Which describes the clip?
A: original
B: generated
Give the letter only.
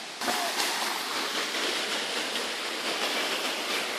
A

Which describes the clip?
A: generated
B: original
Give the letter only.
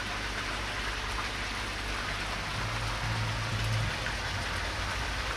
B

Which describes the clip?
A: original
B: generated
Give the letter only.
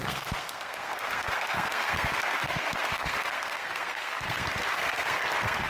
B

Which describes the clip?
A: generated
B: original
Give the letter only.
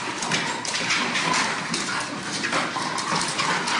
B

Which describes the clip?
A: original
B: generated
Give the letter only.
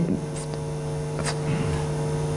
A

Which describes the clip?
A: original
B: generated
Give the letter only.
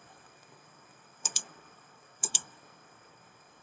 B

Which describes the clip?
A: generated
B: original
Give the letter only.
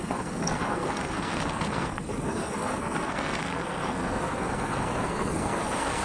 A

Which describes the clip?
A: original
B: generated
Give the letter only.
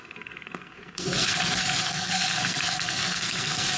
B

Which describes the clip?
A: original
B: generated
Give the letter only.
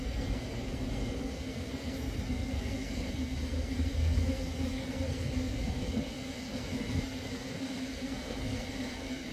B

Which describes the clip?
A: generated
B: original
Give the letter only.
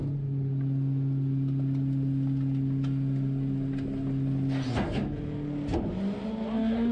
B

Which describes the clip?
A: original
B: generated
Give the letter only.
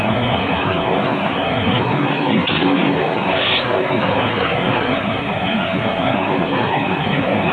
B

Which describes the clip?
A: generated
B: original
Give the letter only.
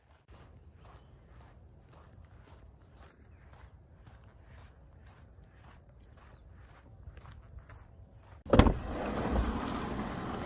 B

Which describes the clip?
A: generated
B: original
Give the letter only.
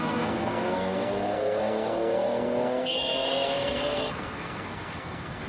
A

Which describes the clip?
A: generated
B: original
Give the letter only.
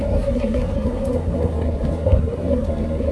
A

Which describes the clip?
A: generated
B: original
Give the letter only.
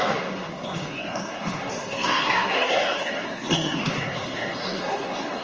A